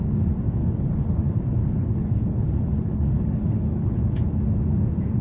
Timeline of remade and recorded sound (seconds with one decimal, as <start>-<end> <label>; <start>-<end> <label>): 0.0-0.6 recorded; 0.6-1.2 remade; 1.2-1.6 recorded; 1.6-4.0 remade; 4.0-5.2 recorded